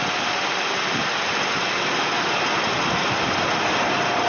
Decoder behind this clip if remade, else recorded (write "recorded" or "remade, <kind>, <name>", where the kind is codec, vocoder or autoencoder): recorded